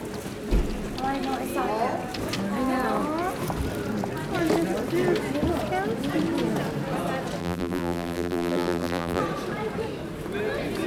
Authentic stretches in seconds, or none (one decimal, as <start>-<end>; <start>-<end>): 0.0-7.4; 9.2-10.9